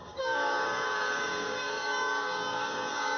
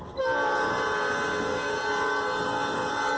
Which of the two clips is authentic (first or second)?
second